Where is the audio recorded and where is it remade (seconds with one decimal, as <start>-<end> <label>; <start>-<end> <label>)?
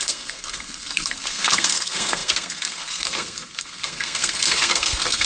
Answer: 0.0-5.2 remade